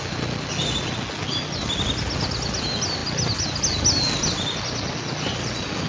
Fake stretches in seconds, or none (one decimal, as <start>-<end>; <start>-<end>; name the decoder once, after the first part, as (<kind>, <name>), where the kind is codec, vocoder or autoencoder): none